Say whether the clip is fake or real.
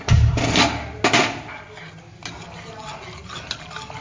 real